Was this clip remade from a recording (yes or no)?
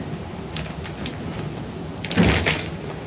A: no